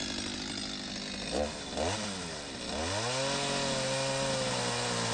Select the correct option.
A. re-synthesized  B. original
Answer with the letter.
B